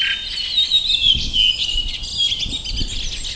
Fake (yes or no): no